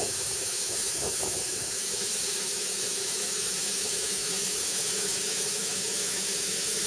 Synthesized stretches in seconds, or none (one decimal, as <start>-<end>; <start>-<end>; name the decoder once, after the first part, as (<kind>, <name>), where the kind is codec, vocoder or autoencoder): 0.0-6.9 (autoencoder, DAC-VAE)